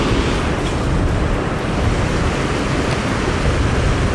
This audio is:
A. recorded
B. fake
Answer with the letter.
A